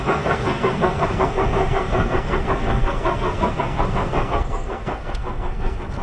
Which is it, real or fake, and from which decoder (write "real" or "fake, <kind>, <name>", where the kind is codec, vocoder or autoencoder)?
fake, codec, SNAC